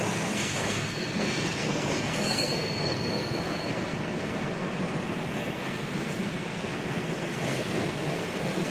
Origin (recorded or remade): remade